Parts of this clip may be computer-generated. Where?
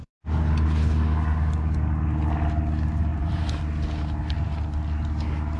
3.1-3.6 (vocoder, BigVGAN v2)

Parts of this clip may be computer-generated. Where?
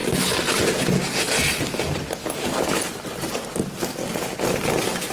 none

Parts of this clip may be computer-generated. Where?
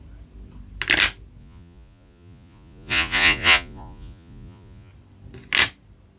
1.4-4.9 (vocoder, Vocos)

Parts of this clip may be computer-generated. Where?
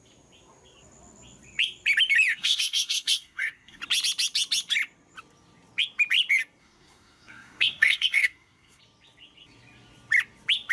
2.3-3.8 (codec, SNAC); 6.6-8.8